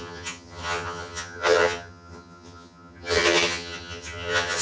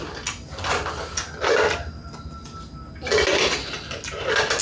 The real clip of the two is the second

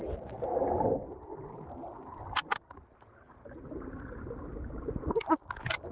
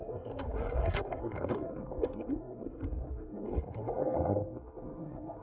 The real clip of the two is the first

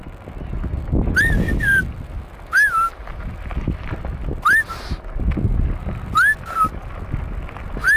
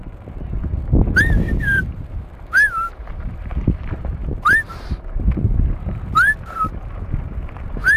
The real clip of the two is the first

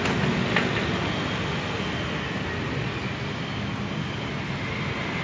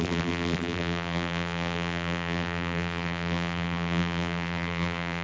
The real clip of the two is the first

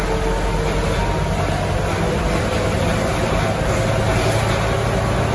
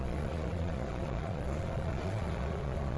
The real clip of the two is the first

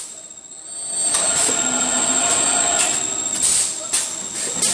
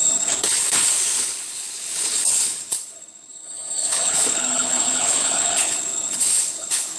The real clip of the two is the first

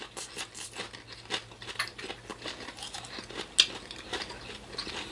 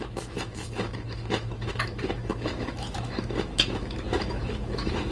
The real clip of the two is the first